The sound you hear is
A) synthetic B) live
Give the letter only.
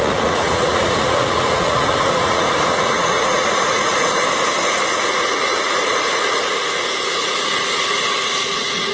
A